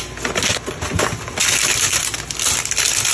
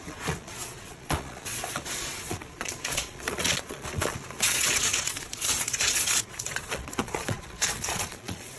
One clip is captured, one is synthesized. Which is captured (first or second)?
first